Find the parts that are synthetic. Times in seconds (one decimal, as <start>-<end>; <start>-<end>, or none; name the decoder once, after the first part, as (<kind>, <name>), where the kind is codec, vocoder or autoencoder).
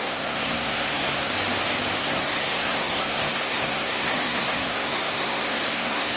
0.0-1.3 (codec, SNAC); 2.0-6.2